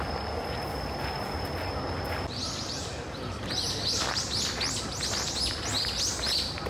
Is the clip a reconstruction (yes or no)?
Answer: no